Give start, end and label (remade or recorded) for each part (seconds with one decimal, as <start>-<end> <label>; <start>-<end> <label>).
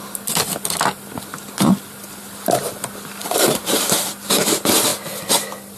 0.0-3.2 recorded; 3.2-4.1 remade; 4.1-5.8 recorded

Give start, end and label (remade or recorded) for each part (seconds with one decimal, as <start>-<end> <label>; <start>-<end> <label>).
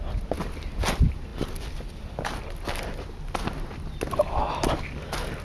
0.0-5.4 recorded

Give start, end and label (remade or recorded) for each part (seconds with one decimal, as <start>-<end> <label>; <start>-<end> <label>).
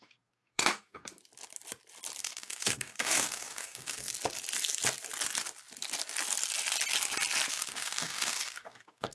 0.0-1.1 remade; 1.1-2.2 recorded; 2.2-4.1 remade; 4.1-7.5 recorded; 7.5-9.1 remade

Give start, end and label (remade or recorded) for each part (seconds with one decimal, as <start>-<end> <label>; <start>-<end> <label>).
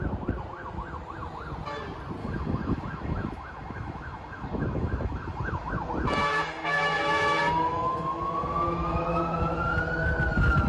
0.0-2.2 recorded; 2.2-5.7 remade; 5.7-6.2 recorded; 6.2-9.5 remade; 9.5-10.7 recorded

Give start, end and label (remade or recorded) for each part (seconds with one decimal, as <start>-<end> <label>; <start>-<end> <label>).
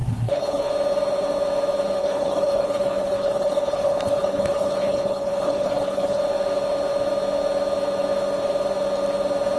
0.0-0.7 remade; 0.7-2.0 recorded; 2.0-6.2 remade; 6.2-9.6 recorded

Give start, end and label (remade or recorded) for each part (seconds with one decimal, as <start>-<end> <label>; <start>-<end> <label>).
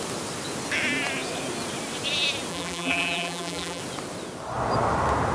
0.0-2.5 recorded; 2.5-3.8 remade; 3.8-5.3 recorded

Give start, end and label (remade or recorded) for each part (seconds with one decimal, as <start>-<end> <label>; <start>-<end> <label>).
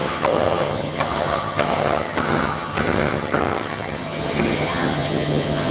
0.0-5.7 remade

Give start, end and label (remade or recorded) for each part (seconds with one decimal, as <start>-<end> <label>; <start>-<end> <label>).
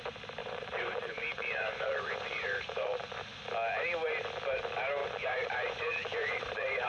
0.0-0.4 recorded; 0.4-3.2 remade; 3.2-5.0 recorded; 5.0-6.9 remade